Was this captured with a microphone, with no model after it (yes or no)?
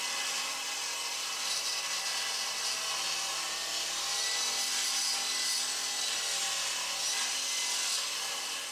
yes